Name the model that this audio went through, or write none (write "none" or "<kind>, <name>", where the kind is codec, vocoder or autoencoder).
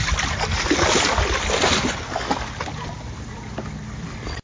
none